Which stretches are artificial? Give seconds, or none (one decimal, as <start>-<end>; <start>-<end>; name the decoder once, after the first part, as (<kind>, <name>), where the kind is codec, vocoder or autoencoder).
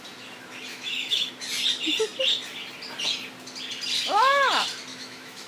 0.7-1.3 (autoencoder, DAC-VAE); 4.9-5.5